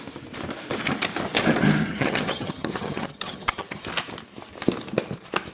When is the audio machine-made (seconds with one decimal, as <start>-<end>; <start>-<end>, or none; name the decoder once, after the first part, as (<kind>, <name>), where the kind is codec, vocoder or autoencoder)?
1.8-3.9 (vocoder, HiFi-GAN)